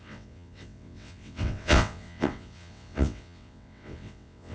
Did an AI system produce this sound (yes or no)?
yes